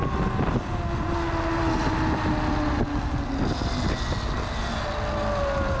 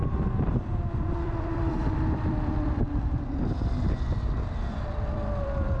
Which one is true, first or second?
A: first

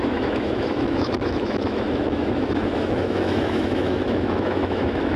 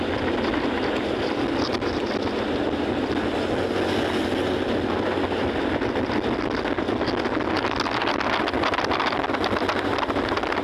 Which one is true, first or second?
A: second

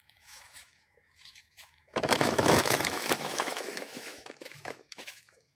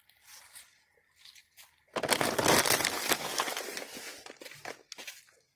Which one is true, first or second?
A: second